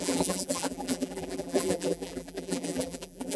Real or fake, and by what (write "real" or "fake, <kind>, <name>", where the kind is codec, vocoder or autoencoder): fake, vocoder, BigVGAN v2